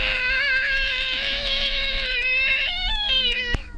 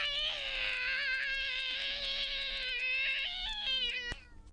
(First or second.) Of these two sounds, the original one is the second